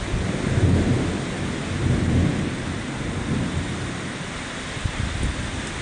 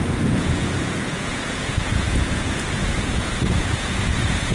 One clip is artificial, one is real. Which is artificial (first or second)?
second